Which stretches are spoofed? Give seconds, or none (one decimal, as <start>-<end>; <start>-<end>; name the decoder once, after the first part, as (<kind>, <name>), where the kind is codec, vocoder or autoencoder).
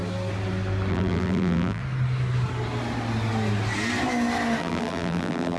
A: 0.9-1.8 (vocoder, BigVGAN v2); 4.6-5.6